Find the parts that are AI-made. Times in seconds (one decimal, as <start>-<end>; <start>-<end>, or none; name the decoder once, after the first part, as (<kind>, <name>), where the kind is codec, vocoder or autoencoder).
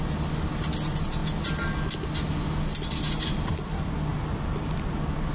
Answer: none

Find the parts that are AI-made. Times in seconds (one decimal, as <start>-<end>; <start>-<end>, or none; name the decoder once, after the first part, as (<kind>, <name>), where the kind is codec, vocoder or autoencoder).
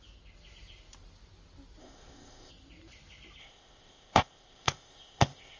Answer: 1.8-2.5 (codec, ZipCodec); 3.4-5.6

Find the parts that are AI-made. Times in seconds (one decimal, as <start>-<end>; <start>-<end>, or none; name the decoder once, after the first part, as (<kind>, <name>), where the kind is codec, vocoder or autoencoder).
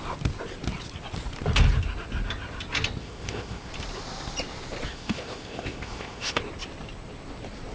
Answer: 3.0-3.7 (codec, ZipCodec); 4.9-6.4